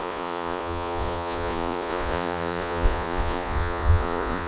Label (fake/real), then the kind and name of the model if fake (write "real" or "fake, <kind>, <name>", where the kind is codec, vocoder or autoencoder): fake, vocoder, Vocos